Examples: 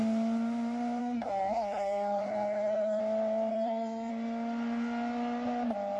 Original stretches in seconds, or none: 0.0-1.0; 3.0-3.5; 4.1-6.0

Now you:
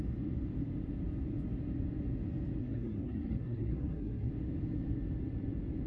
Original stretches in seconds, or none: 0.0-2.6; 4.3-5.9